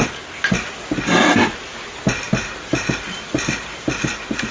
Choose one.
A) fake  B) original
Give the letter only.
B